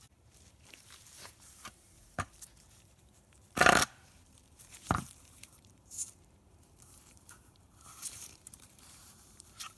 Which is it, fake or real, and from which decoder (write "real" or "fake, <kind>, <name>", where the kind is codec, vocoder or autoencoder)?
fake, vocoder, BigVGAN v2